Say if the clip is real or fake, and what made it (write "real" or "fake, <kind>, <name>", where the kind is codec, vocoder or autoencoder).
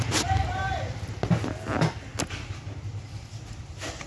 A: real